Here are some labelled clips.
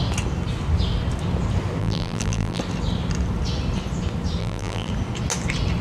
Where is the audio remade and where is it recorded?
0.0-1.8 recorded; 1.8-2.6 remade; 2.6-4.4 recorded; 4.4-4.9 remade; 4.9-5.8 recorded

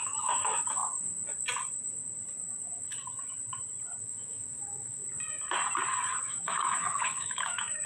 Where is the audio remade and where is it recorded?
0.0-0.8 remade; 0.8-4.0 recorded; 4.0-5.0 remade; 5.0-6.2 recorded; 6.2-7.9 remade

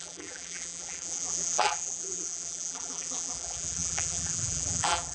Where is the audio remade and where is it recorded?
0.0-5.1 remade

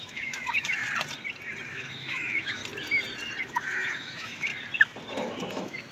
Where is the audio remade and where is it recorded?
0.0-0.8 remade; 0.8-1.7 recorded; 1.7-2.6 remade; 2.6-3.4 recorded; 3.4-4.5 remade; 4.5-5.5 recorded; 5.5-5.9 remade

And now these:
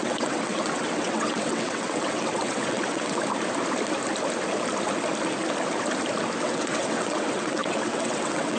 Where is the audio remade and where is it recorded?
0.0-3.2 remade; 3.2-6.4 recorded; 6.4-8.6 remade

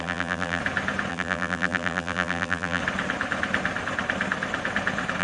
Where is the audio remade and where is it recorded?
0.0-0.6 remade; 0.6-1.1 recorded; 1.1-2.8 remade; 2.8-5.2 recorded